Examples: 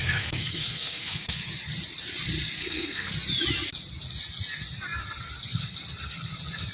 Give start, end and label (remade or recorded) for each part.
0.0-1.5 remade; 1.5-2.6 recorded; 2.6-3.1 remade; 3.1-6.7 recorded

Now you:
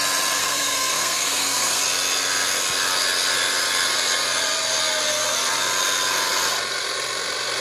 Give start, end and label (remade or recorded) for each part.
0.0-0.4 recorded; 0.4-1.8 remade; 1.8-7.6 recorded